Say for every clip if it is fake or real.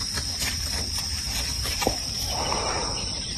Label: fake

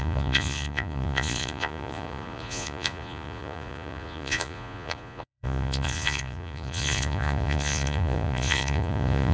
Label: fake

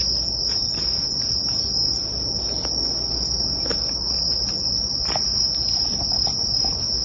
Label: real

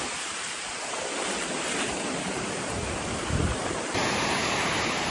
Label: fake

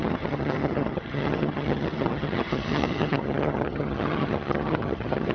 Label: fake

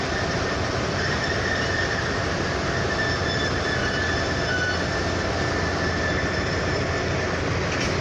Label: real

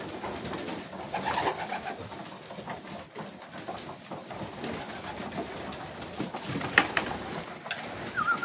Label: real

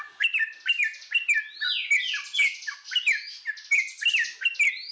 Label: real